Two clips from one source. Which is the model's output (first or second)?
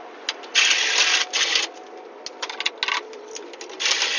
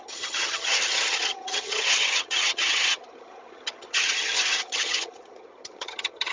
second